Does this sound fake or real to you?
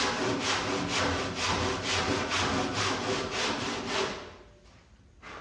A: real